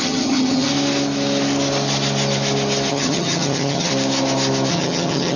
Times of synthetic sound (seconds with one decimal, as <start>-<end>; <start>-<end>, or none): 0.0-0.7; 2.9-3.9; 4.7-5.4